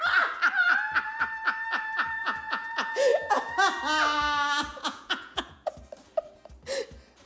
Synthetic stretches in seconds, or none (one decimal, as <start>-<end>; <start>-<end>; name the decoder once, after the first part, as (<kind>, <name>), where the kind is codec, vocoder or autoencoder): 2.2-3.4 (vocoder, Vocos); 4.7-5.7